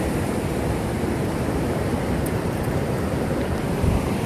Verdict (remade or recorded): recorded